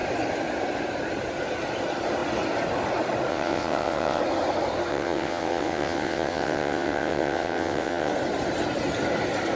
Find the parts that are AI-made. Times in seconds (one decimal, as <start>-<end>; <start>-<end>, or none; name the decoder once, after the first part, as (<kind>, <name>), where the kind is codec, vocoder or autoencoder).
3.3-4.2 (vocoder, WaveNeXt); 4.9-8.1